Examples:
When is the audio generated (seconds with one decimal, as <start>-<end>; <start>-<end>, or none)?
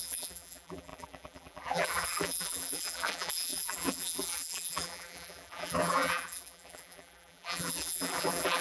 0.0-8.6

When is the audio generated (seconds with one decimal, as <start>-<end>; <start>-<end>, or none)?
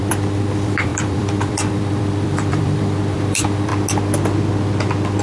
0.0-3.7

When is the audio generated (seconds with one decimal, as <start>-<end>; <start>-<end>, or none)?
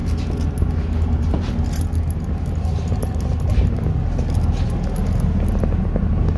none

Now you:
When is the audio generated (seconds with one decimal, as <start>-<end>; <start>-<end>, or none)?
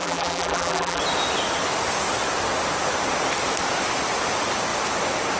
0.0-1.0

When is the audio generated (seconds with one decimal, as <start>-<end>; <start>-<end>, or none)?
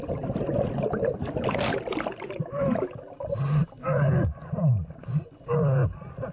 none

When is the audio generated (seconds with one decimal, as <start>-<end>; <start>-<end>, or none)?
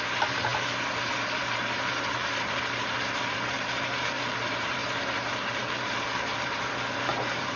0.0-7.6